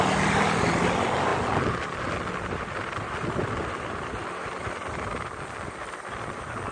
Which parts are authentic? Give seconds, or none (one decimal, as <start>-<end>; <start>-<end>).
0.0-6.7